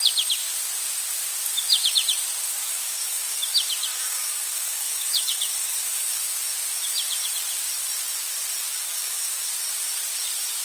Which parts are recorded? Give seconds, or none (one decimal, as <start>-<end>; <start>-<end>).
0.0-2.6; 3.4-3.9; 6.1-8.7; 9.5-10.6